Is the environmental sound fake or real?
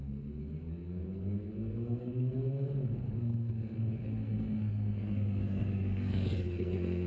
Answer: fake